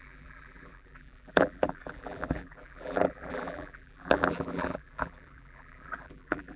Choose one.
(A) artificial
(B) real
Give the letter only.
A